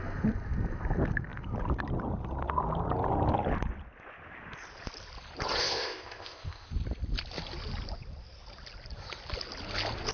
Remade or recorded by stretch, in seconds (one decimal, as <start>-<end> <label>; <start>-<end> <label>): 0.0-5.6 recorded; 5.6-6.7 remade; 6.7-10.1 recorded